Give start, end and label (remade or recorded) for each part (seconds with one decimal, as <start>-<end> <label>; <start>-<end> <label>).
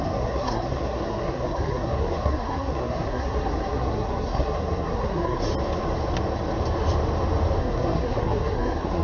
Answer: 0.0-5.5 remade; 5.5-7.6 recorded; 7.6-9.0 remade